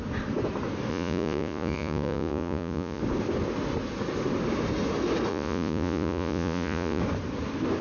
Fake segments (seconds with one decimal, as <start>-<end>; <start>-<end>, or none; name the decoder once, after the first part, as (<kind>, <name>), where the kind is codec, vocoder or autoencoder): 0.9-3.0 (vocoder, Vocos); 5.3-7.0